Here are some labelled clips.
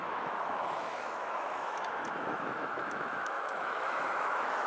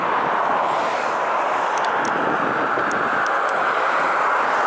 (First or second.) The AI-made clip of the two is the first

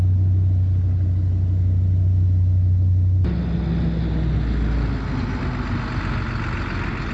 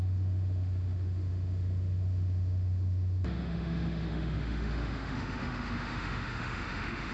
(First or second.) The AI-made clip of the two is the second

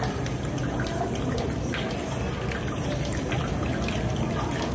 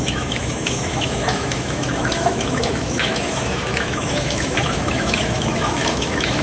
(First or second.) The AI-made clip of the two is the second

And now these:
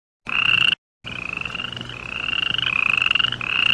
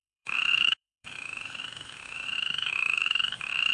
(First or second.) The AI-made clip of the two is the second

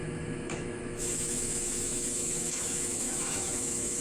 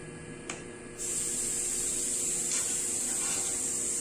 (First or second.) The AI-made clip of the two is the first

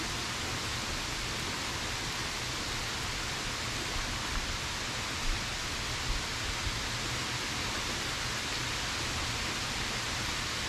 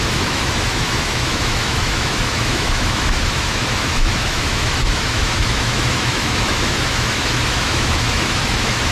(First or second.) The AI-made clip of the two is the second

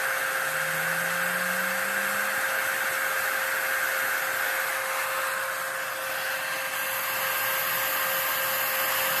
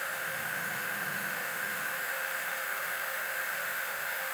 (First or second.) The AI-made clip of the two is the second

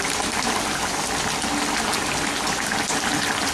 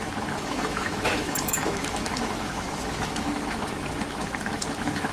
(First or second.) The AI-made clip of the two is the second